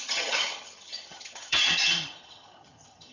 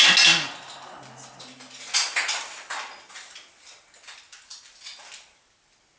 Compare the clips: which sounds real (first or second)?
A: second